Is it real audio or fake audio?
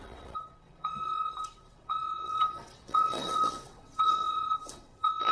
fake